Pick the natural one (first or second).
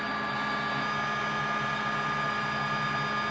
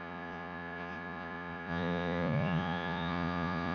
first